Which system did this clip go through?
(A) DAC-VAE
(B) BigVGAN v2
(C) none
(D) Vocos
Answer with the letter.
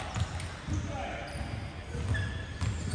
C